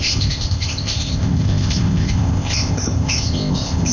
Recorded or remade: remade